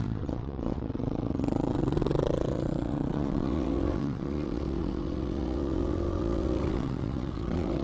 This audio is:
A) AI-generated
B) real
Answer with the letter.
A